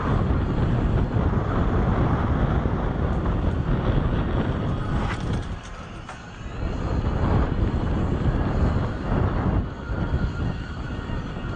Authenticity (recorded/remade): recorded